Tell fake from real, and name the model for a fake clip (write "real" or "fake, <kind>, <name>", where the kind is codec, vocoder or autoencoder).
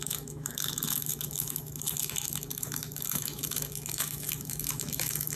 fake, autoencoder, DAC-VAE